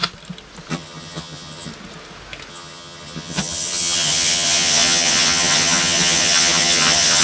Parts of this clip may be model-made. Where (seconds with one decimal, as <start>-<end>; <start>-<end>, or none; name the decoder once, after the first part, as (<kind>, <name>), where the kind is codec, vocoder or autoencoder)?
0.7-1.7 (vocoder, HiFi-GAN); 2.5-7.2